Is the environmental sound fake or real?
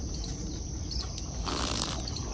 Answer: real